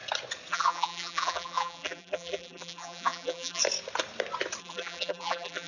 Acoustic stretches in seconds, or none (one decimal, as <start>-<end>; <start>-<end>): 0.0-0.5; 3.6-4.6